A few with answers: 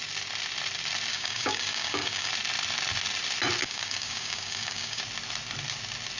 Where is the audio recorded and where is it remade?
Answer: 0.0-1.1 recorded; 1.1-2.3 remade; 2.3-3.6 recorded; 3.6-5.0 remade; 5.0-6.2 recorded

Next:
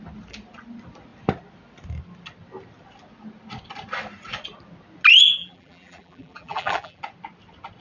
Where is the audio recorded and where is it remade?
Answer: 0.0-5.4 recorded; 5.4-7.0 remade; 7.0-7.8 recorded

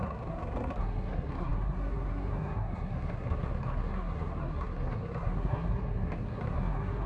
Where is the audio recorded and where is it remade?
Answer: 0.0-7.1 remade

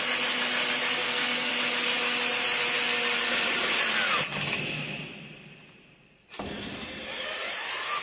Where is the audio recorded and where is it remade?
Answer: 0.0-1.0 recorded; 1.0-1.5 remade; 1.5-8.0 recorded

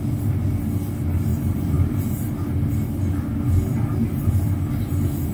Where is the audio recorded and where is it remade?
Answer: 0.0-1.3 recorded; 1.3-2.3 remade; 2.3-5.3 recorded

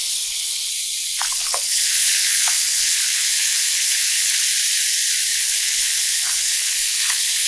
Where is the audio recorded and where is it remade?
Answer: 0.0-0.7 remade; 0.7-1.4 recorded; 1.4-4.4 remade; 4.4-5.3 recorded; 5.3-7.5 remade

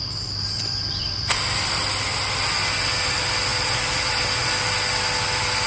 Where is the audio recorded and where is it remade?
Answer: 0.0-3.5 recorded; 3.5-4.1 remade; 4.1-5.7 recorded